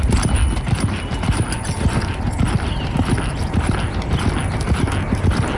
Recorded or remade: recorded